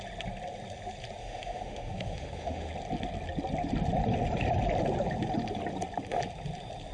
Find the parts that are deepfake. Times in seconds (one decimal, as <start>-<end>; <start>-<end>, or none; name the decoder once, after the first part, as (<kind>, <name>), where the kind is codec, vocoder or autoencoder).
1.2-2.7 (autoencoder, DAC-VAE)